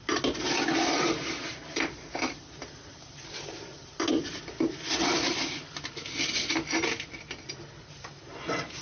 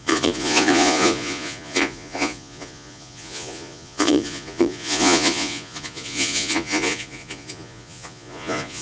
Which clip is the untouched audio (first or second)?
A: first